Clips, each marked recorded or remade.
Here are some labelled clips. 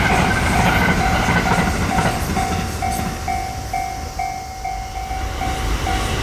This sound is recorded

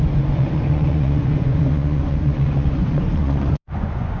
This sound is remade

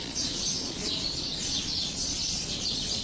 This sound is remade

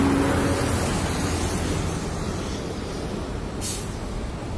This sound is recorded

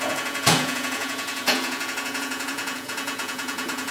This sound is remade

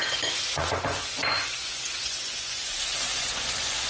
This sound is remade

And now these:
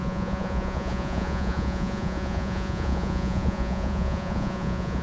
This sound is remade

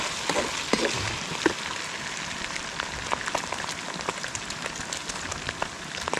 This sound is recorded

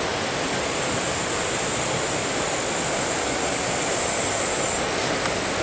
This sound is recorded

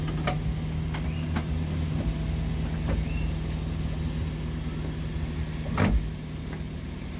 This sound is recorded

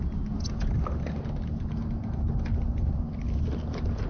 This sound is recorded